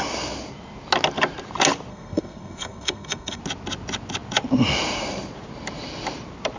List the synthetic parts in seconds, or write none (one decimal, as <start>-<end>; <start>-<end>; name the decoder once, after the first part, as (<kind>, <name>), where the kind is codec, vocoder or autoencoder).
1.9-3.4 (codec, SNAC)